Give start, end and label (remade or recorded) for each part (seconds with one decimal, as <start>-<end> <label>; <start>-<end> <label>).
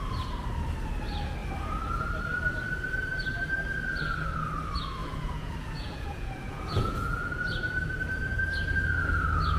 0.0-5.0 recorded; 5.0-7.7 remade; 7.7-9.6 recorded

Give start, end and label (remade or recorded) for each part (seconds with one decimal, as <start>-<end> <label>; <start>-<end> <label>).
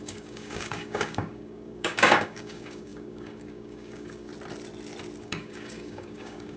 0.0-4.3 remade; 4.3-5.2 recorded; 5.2-6.6 remade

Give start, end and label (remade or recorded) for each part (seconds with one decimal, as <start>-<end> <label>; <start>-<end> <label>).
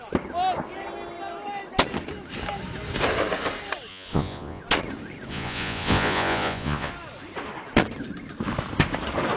0.0-3.9 recorded; 3.9-4.6 remade; 4.6-5.3 recorded; 5.3-6.9 remade; 6.9-9.4 recorded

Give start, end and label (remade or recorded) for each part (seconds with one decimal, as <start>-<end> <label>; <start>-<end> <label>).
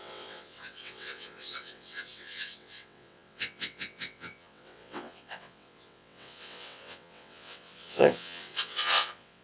0.0-9.4 remade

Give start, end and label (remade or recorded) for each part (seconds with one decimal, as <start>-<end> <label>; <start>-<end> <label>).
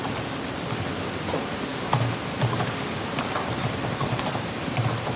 0.0-5.2 recorded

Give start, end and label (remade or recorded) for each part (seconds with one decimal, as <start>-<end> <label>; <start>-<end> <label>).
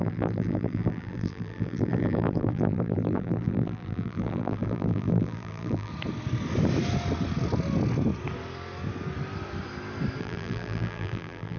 0.0-5.9 remade; 5.9-10.2 recorded; 10.2-11.6 remade